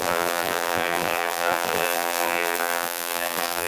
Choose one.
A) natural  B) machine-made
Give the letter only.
B